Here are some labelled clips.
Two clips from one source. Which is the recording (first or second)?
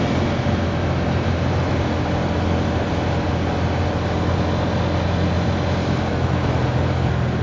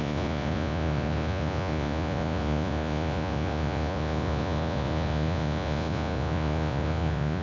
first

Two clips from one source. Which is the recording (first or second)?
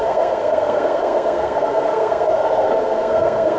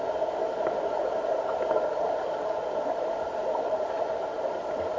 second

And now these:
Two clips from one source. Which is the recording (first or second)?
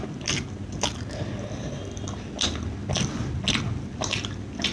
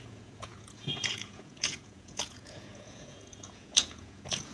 first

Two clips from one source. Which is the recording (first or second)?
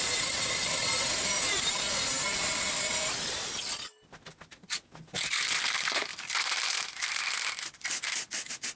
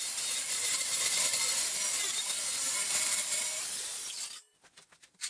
first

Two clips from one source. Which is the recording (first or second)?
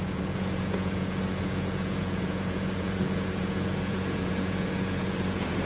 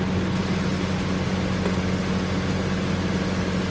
second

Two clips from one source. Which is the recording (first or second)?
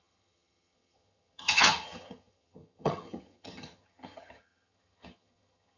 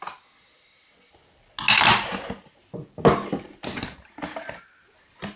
second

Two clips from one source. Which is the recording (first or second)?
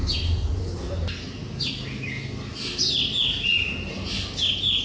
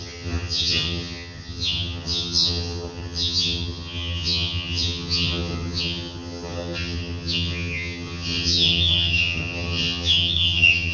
first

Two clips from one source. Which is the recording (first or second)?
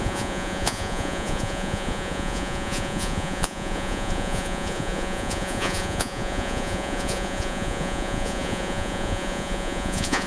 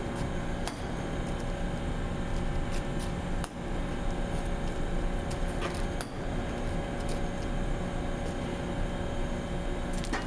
second